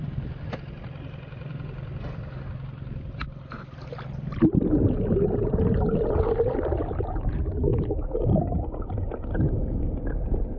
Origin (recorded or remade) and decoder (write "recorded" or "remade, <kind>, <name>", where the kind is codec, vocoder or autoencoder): recorded